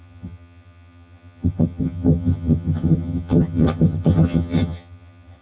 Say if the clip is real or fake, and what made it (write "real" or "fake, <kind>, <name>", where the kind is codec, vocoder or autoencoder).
fake, vocoder, HiFi-GAN